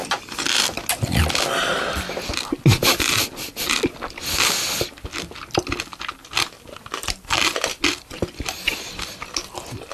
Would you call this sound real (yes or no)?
yes